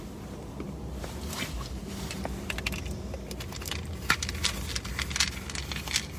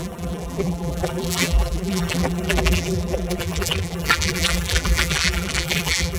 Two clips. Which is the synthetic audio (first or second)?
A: second